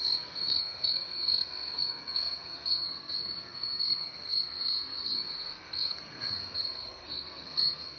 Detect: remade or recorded remade